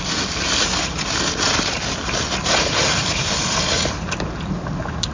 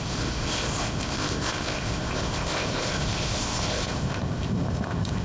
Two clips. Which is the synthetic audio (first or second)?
second